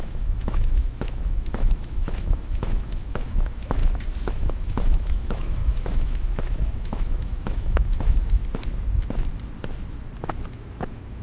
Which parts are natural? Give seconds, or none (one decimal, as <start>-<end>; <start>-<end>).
3.8-4.3; 8.4-10.5